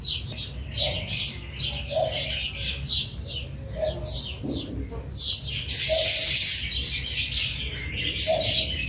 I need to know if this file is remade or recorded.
recorded